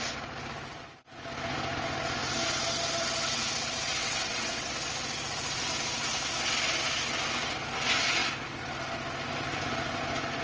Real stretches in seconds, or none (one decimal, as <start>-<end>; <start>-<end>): 0.0-4.0; 4.7-10.4